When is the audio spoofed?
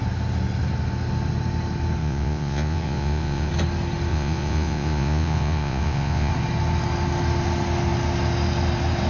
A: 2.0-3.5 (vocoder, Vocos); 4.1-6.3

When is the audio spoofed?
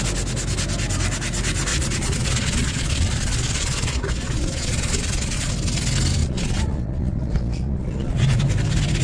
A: 1.7-5.5 (vocoder, Vocos); 6.2-8.4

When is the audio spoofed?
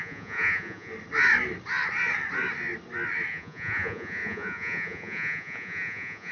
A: 0.0-0.9 (vocoder, Vocos); 3.3-6.3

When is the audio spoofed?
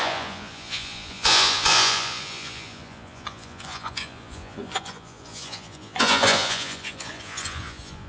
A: 0.0-8.1 (vocoder, Vocos)